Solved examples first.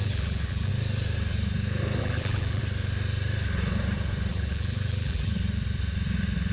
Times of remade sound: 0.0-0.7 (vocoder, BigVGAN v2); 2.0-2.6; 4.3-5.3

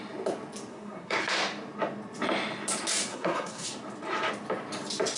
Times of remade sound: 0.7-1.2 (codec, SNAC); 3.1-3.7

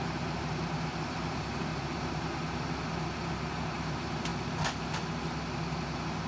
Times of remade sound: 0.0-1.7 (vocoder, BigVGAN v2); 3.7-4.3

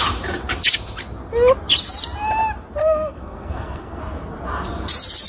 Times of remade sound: 2.8-4.0 (codec, SNAC)